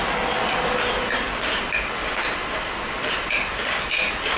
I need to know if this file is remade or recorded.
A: recorded